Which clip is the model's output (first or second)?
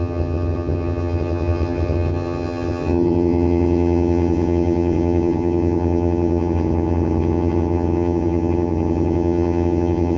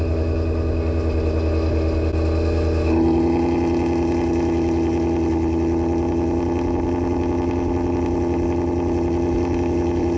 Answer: first